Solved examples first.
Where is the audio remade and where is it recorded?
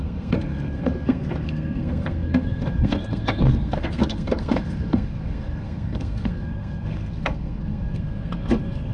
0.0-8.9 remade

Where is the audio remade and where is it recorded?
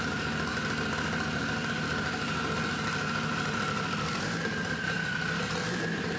0.0-0.5 remade; 0.5-4.2 recorded; 4.2-6.2 remade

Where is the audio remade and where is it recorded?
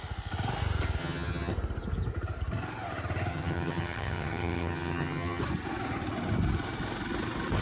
0.0-1.0 recorded; 1.0-1.5 remade; 1.5-3.3 recorded; 3.3-5.4 remade; 5.4-7.6 recorded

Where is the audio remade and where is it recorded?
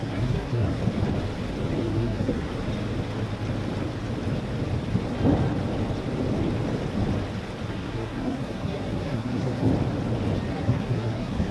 0.0-0.8 remade; 0.8-1.8 recorded; 1.8-2.5 remade; 2.5-7.7 recorded; 7.7-9.7 remade; 9.7-10.5 recorded; 10.5-11.5 remade